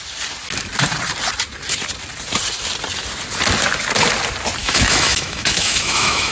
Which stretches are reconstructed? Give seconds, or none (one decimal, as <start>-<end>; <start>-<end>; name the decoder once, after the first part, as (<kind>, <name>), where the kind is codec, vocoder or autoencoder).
4.6-6.3 (autoencoder, DAC-VAE)